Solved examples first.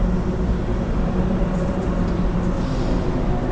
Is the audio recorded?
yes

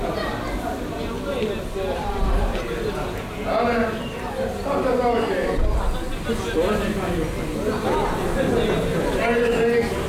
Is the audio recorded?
yes